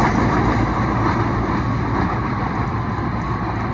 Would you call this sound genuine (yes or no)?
no